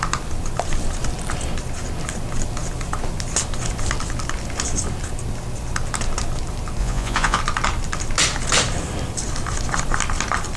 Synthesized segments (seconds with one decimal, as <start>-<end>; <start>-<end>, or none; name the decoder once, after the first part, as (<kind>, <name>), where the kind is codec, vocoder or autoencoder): 6.8-7.4 (vocoder, Vocos)